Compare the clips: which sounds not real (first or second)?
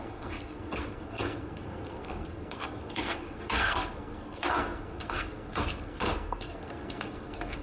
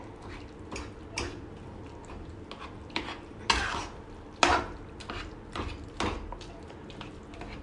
first